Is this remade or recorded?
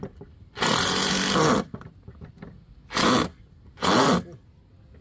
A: recorded